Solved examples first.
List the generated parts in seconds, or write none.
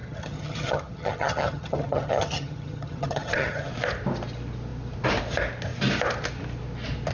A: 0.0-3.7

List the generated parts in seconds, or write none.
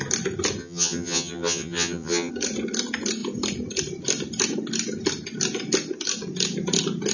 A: 0.6-2.3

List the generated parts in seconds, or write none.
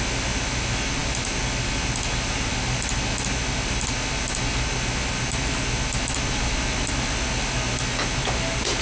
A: none